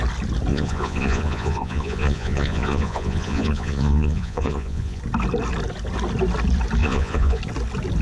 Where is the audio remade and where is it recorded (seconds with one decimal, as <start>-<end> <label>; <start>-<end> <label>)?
0.0-0.5 recorded; 0.5-5.0 remade; 5.0-6.8 recorded; 6.8-7.4 remade; 7.4-8.0 recorded